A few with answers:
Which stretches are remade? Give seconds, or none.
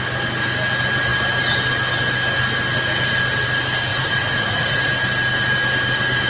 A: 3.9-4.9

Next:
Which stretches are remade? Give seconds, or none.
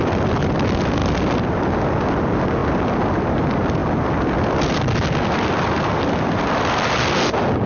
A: none